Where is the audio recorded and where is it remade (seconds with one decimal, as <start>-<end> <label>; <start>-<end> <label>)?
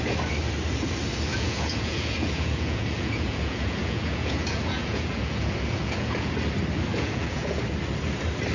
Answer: 0.0-1.3 recorded; 1.3-6.3 remade; 6.3-6.9 recorded; 6.9-7.6 remade; 7.6-8.5 recorded